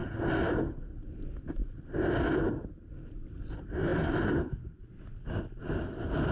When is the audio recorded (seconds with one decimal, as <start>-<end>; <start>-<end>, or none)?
0.0-6.3